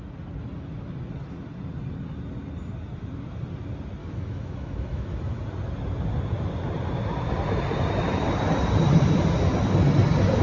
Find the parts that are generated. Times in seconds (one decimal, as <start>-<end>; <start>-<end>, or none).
4.0-5.4